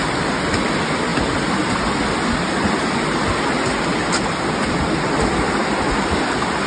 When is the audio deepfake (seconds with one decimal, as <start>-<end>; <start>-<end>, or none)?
none

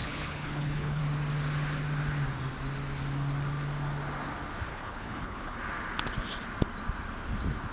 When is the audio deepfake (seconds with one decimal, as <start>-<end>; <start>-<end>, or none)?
0.0-1.0; 4.7-5.6

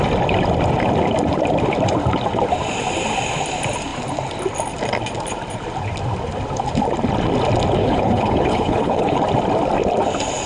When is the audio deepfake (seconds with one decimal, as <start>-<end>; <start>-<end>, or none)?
7.8-9.2

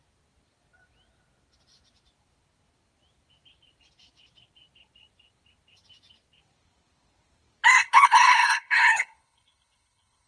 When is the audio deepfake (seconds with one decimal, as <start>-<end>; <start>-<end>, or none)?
7.8-10.3